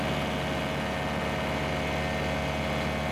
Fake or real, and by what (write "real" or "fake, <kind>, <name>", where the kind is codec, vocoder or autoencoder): real